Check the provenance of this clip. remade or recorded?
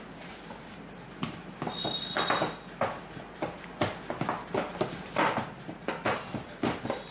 recorded